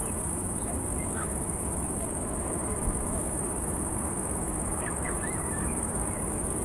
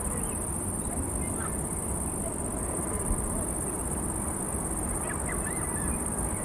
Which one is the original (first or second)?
second